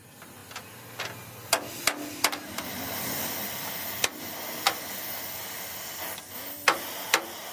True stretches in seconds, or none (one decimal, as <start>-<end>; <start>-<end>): 0.0-7.5